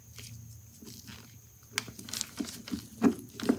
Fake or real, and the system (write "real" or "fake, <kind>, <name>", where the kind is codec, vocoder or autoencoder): real